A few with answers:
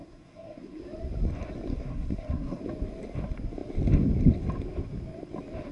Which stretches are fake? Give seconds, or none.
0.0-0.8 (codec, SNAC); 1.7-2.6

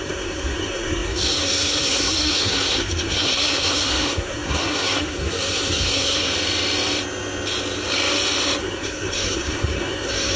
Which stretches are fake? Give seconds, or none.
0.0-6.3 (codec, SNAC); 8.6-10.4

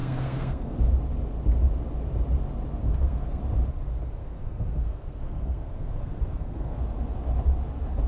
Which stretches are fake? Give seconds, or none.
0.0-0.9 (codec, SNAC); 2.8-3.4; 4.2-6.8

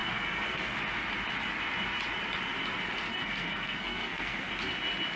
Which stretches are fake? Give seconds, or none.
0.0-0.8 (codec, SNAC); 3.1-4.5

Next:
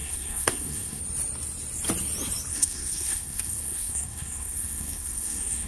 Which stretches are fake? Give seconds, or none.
0.0-1.0 (codec, SNAC); 2.5-5.7

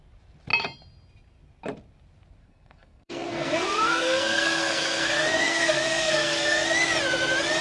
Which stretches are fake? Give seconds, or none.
2.4-6.7 (codec, SNAC)

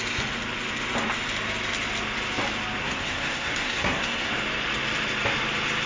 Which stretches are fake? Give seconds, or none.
2.8-4.3 (codec, SNAC)

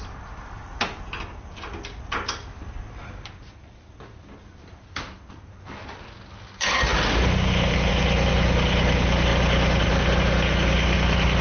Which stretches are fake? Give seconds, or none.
none